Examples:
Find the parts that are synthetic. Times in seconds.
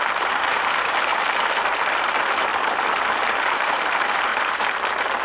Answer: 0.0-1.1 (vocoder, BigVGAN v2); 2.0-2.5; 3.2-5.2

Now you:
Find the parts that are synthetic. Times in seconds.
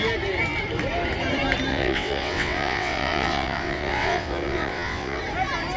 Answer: 1.7-5.2 (vocoder, WaveNeXt)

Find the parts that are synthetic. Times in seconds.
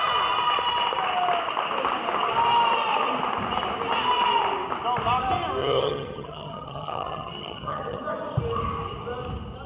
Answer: 5.6-8.0 (vocoder, HiFi-GAN)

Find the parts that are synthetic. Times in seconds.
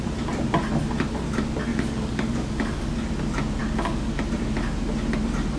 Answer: 1.7-2.9 (codec, DAC); 3.6-4.2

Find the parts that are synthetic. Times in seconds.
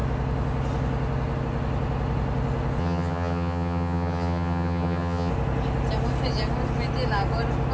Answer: 2.8-5.3 (vocoder, HiFi-GAN)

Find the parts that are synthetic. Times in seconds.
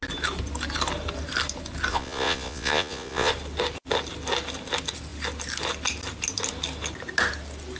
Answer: 1.9-3.3 (vocoder, Vocos)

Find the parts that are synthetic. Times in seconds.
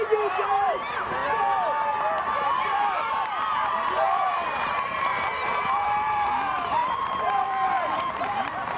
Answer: 0.0-1.2 (vocoder, BigVGAN v2); 2.6-8.8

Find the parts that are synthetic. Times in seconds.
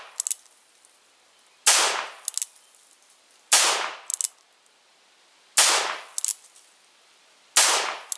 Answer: none